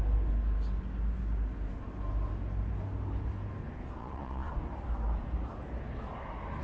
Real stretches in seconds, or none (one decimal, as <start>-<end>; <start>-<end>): 0.0-4.0; 4.5-6.6